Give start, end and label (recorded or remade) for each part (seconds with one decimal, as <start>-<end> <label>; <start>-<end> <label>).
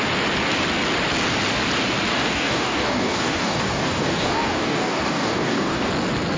0.0-2.1 recorded; 2.1-5.9 remade; 5.9-6.4 recorded